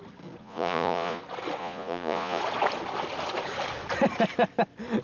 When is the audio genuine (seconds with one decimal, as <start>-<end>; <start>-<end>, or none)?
0.0-0.4; 1.2-1.6; 2.4-5.0